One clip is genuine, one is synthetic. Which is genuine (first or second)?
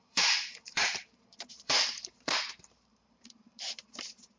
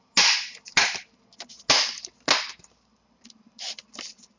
second